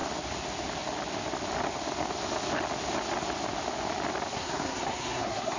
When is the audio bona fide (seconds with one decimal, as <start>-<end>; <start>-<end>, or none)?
0.0-4.3